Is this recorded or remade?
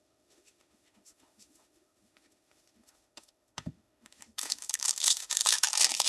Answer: remade